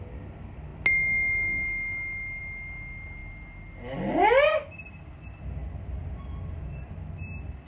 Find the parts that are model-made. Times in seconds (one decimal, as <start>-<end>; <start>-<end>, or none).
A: none